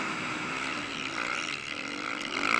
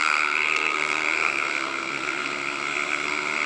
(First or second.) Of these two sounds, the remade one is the second